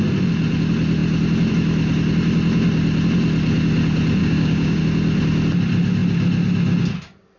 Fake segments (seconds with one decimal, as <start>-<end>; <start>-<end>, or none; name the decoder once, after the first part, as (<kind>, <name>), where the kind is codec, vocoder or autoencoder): 4.2-4.8 (codec, DAC)